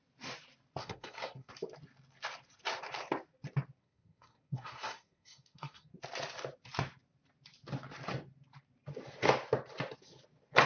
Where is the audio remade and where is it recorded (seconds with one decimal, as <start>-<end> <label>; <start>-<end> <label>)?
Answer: 0.0-0.8 recorded; 0.8-1.5 remade; 1.5-3.8 recorded; 3.8-5.9 remade; 5.9-10.7 recorded